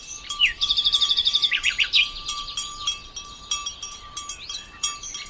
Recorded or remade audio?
remade